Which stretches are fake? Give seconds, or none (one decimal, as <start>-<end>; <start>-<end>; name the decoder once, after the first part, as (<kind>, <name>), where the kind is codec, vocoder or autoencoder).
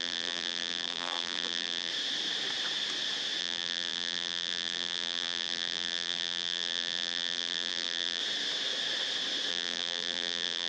0.0-1.9 (vocoder, BigVGAN v2); 3.4-8.2; 9.5-10.7